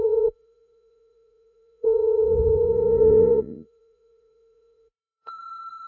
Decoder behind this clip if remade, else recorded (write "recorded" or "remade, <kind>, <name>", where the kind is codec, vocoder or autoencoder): remade, vocoder, Vocos